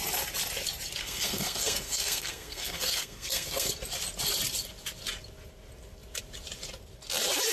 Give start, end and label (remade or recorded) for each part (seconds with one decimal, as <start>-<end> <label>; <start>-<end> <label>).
0.0-1.0 recorded; 1.0-3.7 remade; 3.7-7.5 recorded